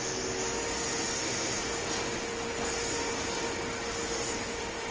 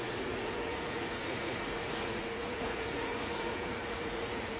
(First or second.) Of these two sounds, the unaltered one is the first